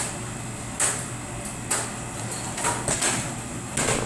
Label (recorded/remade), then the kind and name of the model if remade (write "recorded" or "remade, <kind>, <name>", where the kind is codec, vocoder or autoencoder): recorded